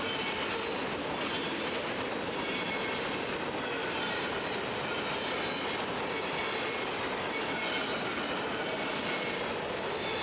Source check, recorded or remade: recorded